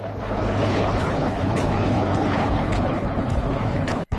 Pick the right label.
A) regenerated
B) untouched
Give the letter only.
A